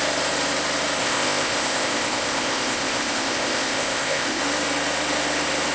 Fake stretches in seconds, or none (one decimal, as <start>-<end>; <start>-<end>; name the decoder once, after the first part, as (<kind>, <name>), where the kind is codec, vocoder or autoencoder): 1.0-4.4 (codec, ZipCodec)